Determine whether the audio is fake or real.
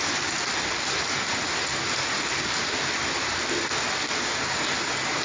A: real